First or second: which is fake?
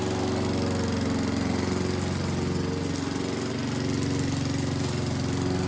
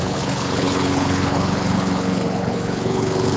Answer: second